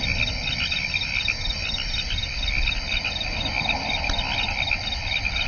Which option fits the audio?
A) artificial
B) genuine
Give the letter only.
B